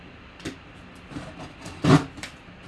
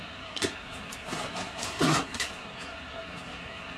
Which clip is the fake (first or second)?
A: second